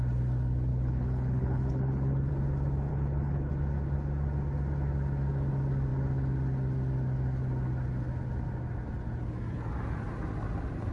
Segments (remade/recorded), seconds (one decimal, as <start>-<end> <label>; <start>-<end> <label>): 0.0-0.7 recorded; 0.7-2.3 remade; 2.3-2.9 recorded; 2.9-3.5 remade; 3.5-10.9 recorded